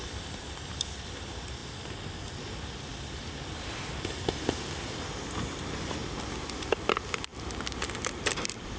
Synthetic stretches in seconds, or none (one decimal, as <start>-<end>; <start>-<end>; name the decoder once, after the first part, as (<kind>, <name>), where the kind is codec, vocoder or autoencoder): 0.0-1.6 (vocoder, BigVGAN v2); 2.5-6.0; 6.7-7.3; 7.8-8.8